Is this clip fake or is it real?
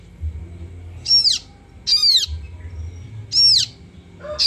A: real